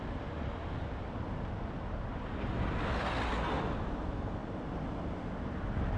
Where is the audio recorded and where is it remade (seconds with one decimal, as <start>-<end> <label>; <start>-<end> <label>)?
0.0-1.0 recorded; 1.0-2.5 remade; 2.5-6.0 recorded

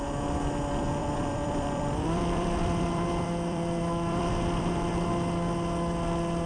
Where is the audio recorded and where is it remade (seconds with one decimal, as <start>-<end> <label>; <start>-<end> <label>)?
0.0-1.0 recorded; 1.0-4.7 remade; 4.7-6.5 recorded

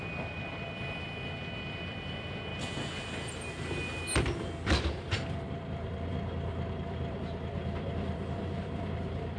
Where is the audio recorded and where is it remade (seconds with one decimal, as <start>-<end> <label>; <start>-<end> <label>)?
0.0-2.5 remade; 2.5-3.0 recorded; 3.0-9.4 remade

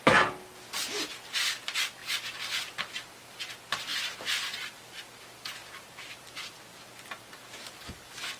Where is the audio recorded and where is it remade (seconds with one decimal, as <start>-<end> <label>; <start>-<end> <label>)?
0.0-2.0 recorded; 2.0-3.1 remade; 3.1-5.6 recorded; 5.6-7.9 remade; 7.9-8.4 recorded

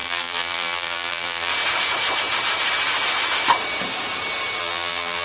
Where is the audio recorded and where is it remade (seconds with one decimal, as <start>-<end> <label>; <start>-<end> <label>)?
0.0-1.5 remade; 1.5-4.6 recorded; 4.6-5.2 remade

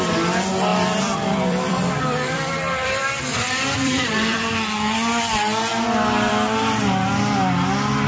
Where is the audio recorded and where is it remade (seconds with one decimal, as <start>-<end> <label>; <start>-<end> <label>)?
0.0-0.7 recorded; 0.7-4.5 remade; 4.5-8.1 recorded

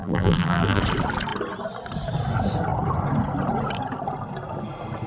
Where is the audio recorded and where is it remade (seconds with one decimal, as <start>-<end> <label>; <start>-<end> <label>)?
0.0-0.8 remade; 0.8-5.1 recorded

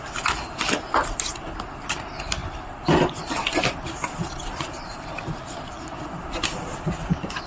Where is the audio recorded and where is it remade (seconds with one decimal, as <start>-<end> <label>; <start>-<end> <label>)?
0.0-2.4 recorded; 2.4-6.9 remade; 6.9-7.5 recorded